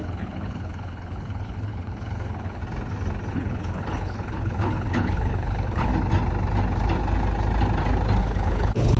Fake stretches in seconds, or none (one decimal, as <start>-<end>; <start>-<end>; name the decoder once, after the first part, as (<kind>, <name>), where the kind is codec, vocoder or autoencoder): 0.0-2.6 (codec, HILCodec); 3.3-5.9; 8.2-9.0